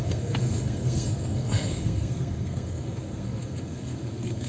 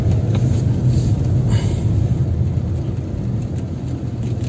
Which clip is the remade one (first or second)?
first